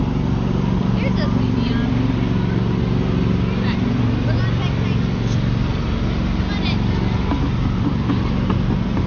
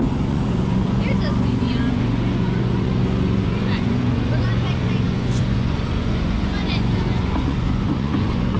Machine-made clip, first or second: second